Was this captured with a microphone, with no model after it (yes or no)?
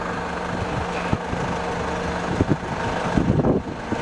yes